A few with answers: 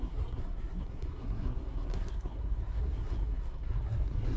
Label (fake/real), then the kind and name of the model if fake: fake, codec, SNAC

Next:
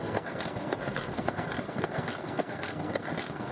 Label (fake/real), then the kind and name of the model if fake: fake, codec, SNAC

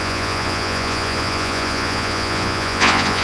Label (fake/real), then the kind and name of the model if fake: fake, vocoder, Vocos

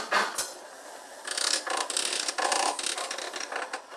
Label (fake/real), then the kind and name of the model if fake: real